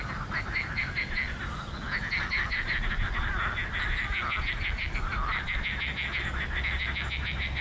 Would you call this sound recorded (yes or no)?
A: yes